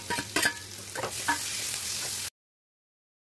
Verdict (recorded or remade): recorded